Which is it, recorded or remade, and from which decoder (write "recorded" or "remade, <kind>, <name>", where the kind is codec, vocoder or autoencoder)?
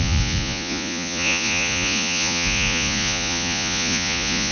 remade, vocoder, Vocos